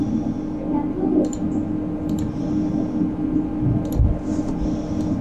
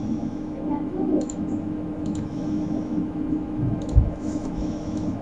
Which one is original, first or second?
first